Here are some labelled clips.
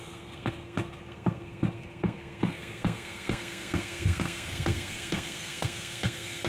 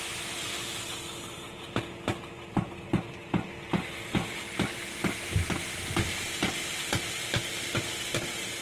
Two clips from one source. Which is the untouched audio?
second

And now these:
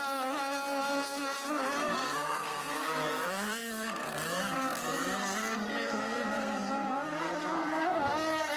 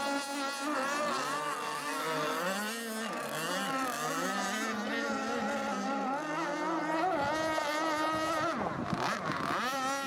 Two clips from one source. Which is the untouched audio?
second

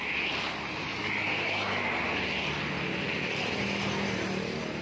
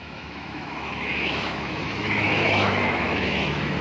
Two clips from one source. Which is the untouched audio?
first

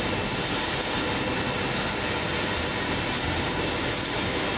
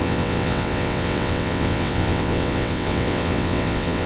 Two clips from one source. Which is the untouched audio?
first